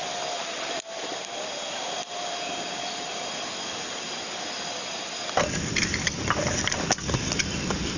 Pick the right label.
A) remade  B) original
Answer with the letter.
B